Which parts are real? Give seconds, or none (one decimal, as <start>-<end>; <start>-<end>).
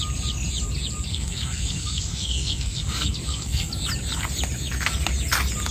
0.0-1.1; 3.7-5.7